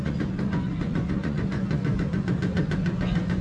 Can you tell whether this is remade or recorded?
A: remade